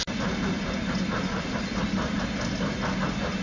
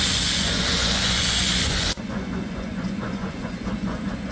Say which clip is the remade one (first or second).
second